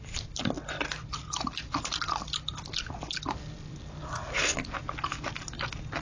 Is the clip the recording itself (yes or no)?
yes